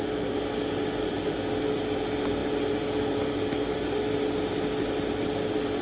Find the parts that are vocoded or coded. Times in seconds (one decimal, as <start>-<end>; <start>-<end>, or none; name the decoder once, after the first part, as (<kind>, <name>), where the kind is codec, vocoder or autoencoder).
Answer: none